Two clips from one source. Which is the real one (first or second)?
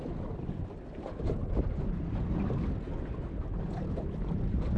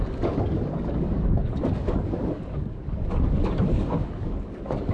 first